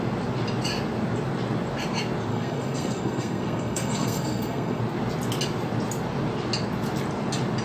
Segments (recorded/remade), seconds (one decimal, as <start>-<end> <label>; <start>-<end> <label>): 0.0-2.3 recorded; 2.3-4.8 remade; 4.8-7.6 recorded